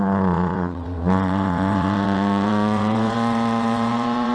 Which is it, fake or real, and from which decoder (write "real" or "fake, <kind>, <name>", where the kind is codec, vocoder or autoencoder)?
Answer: fake, vocoder, WaveNeXt